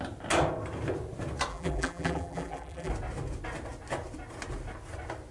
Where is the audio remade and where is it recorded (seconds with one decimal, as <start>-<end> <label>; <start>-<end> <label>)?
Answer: 0.0-1.5 recorded; 1.5-2.9 remade; 2.9-5.3 recorded